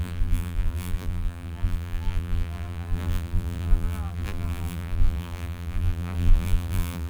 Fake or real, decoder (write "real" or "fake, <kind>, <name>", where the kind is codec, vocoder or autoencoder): fake, vocoder, BigVGAN v2